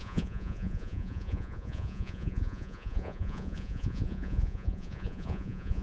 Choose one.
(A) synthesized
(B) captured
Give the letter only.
A